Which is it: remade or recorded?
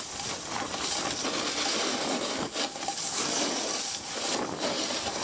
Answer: recorded